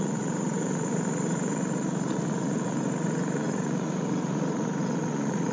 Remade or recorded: remade